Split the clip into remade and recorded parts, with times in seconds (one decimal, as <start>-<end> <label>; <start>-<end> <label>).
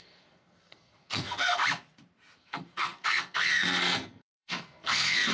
0.0-1.6 remade; 1.6-2.4 recorded; 2.4-5.3 remade